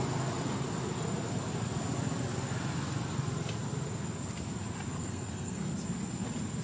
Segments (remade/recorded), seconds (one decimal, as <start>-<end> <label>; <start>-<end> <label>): 0.0-5.0 recorded; 5.0-5.7 remade; 5.7-6.6 recorded